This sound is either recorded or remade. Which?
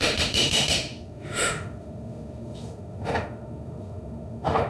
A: remade